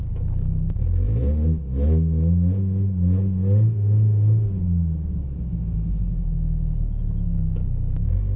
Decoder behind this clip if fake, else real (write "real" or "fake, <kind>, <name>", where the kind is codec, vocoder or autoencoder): real